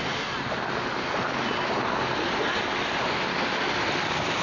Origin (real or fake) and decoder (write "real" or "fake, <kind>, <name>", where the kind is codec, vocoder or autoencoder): real